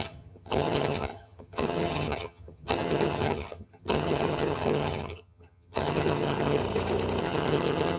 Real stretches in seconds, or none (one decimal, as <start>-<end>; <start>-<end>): 6.6-7.2